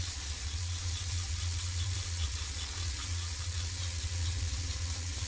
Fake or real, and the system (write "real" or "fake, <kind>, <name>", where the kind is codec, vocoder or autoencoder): fake, vocoder, Vocos